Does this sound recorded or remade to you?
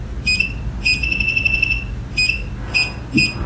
recorded